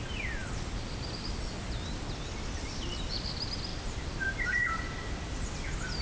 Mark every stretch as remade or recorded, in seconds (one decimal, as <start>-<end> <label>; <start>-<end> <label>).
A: 0.0-6.0 recorded